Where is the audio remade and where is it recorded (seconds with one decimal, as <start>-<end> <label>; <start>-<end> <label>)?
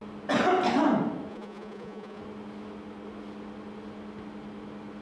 0.0-1.3 recorded; 1.3-2.2 remade; 2.2-5.0 recorded